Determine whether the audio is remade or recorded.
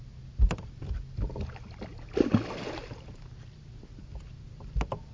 recorded